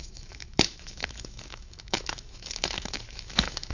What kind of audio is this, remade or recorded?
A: remade